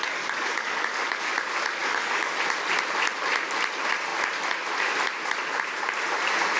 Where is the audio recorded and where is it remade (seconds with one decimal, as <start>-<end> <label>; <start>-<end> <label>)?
0.0-1.3 remade; 1.3-1.8 recorded; 1.8-2.3 remade; 2.3-6.6 recorded